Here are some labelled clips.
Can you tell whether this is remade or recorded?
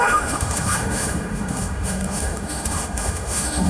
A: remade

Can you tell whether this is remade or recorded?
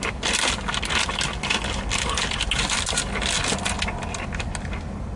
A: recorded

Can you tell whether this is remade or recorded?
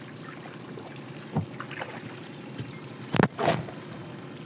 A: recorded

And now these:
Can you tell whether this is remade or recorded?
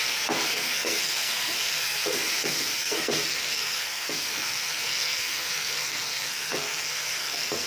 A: remade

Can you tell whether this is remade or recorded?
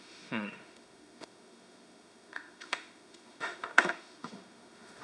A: remade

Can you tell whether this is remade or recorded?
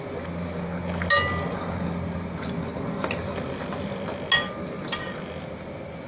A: recorded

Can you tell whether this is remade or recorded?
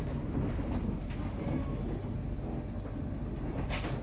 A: recorded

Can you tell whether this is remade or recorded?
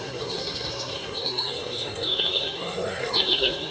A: remade